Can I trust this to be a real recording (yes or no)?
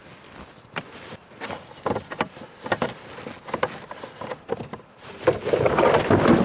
yes